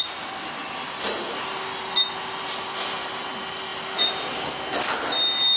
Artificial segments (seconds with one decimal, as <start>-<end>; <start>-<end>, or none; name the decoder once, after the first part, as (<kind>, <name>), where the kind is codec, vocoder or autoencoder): none